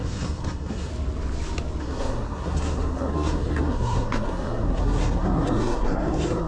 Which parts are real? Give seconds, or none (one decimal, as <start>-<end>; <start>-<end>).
0.9-1.8